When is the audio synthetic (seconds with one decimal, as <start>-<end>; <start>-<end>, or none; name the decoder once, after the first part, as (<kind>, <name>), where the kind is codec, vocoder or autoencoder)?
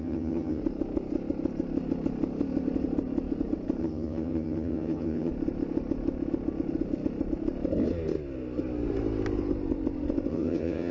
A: 0.0-0.6 (vocoder, HiFi-GAN); 3.8-5.3; 10.3-10.9